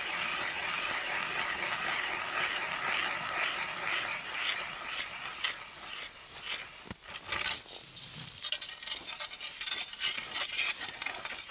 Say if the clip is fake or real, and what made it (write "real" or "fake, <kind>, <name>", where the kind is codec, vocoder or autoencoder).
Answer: real